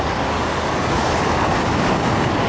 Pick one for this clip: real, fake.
fake